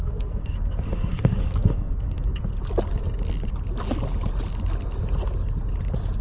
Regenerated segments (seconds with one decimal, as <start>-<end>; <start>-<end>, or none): 0.0-2.3